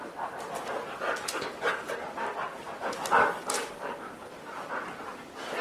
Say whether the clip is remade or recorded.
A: recorded